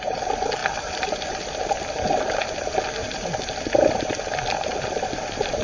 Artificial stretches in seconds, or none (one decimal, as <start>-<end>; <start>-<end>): 0.6-1.6; 3.0-3.5